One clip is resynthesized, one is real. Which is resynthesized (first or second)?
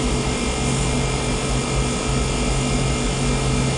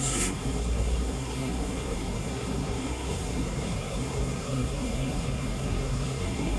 second